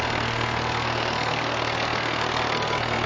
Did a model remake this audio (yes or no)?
yes